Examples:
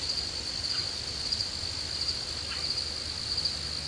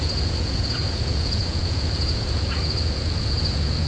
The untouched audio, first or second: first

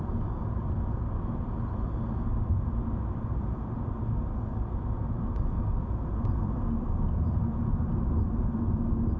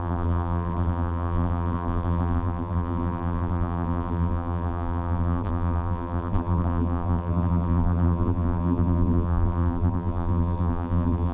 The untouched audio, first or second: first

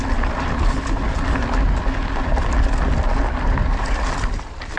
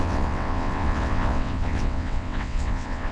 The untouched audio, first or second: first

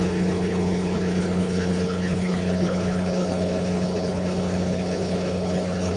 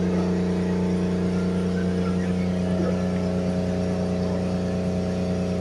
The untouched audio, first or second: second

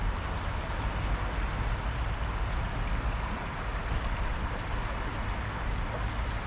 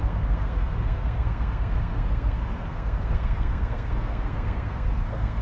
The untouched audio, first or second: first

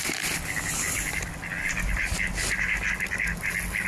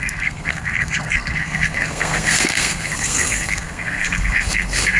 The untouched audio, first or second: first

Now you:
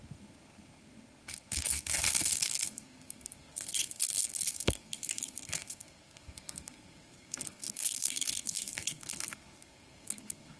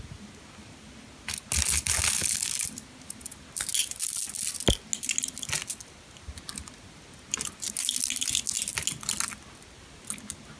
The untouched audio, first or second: second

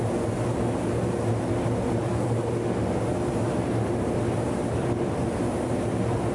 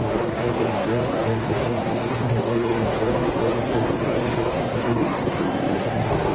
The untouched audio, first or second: first